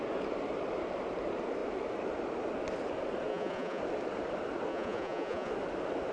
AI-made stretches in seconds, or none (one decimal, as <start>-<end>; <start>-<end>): 3.3-3.8; 4.7-5.5